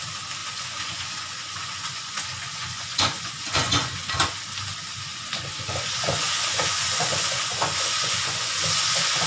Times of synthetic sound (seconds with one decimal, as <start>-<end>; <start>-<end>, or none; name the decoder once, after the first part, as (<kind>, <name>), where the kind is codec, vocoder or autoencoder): 0.4-4.1 (vocoder, Vocos); 5.1-9.3